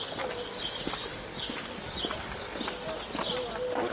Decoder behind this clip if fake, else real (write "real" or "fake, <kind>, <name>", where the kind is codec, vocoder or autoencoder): real